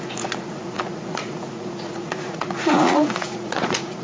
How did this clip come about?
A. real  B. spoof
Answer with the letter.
B